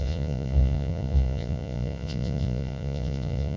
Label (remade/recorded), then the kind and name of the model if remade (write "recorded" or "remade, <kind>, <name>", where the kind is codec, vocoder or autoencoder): remade, vocoder, Vocos